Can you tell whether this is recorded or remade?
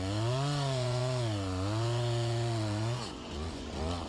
remade